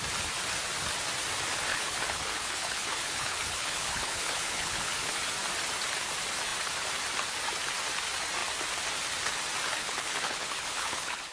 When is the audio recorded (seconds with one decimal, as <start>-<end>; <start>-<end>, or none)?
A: 0.0-1.7; 5.3-9.8